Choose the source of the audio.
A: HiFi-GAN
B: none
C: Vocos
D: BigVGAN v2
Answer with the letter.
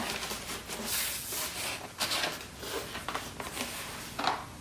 B